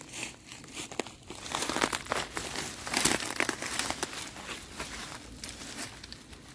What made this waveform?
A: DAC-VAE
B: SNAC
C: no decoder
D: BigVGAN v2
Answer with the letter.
C